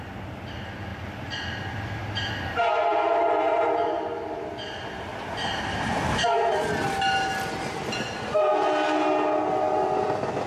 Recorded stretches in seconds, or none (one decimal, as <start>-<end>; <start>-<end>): 0.0-0.9; 2.3-10.5